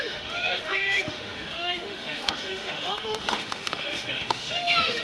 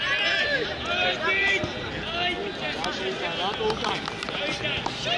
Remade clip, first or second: first